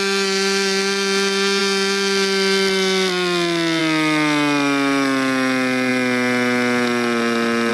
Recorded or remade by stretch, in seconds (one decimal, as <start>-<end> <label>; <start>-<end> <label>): 0.0-7.7 recorded